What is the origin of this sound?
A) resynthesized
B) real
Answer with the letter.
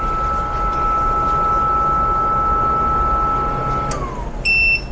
B